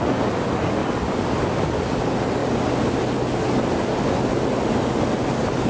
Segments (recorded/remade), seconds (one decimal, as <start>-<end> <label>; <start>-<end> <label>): 0.0-5.7 recorded

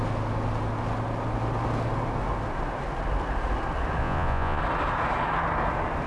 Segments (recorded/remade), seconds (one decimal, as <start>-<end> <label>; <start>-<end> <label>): 0.0-4.0 recorded; 4.0-4.6 remade; 4.6-6.1 recorded

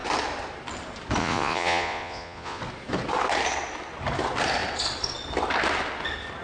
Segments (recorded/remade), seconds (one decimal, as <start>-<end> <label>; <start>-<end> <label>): 0.0-1.2 recorded; 1.2-2.6 remade; 2.6-6.4 recorded

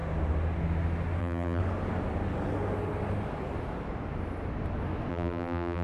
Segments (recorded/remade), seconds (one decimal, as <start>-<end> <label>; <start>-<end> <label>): 0.0-1.2 recorded; 1.2-1.6 remade; 1.6-5.1 recorded; 5.1-5.8 remade